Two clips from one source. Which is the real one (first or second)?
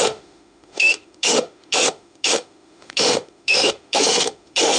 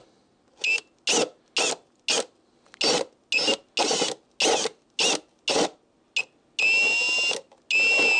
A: second